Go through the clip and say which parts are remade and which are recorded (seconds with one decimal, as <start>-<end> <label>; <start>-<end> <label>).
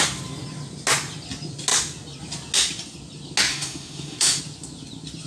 0.0-3.5 recorded; 3.5-4.4 remade; 4.4-5.3 recorded